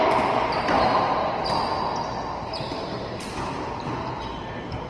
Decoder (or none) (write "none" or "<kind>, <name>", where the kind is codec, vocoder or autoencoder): none